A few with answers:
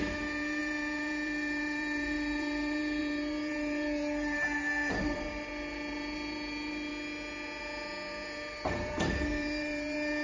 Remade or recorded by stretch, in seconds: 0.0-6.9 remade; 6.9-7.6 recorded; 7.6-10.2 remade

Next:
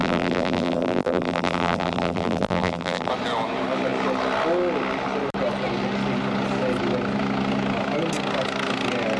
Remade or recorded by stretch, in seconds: 0.0-3.1 remade; 3.1-9.2 recorded

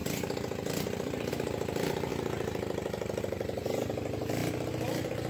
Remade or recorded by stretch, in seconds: 0.0-2.1 remade; 2.1-3.2 recorded; 3.2-4.4 remade; 4.4-5.3 recorded

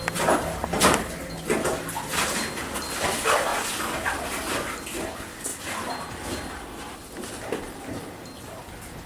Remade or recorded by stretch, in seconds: 0.0-3.5 recorded; 3.5-4.5 remade; 4.5-5.5 recorded; 5.5-8.0 remade; 8.0-9.1 recorded

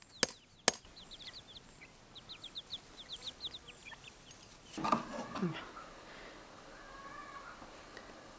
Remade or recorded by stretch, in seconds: 0.0-3.8 recorded; 3.8-5.1 remade; 5.1-8.4 recorded

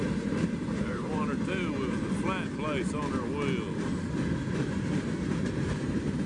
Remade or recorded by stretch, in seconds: 0.0-1.2 remade; 1.2-4.8 recorded; 4.8-6.3 remade

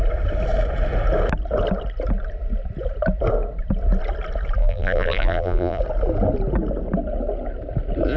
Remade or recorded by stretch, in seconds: 0.0-4.6 recorded; 4.6-5.8 remade; 5.8-8.2 recorded

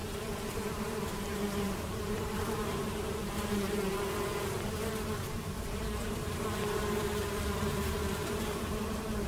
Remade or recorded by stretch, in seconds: 0.0-9.3 remade